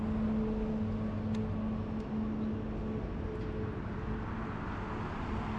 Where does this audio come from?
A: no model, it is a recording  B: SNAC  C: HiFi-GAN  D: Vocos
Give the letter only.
A